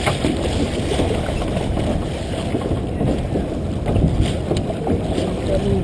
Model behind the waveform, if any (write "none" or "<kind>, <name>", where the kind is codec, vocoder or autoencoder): none